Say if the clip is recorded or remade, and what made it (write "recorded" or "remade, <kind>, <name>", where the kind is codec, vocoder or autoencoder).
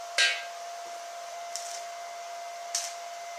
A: recorded